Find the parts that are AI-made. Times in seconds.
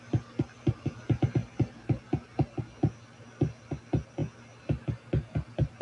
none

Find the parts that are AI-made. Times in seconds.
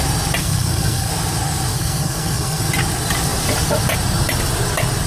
0.4-1.1 (codec, SNAC); 1.7-2.7